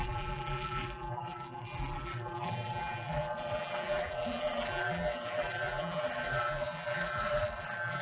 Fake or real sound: fake